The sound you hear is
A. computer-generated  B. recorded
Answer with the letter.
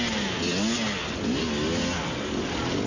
B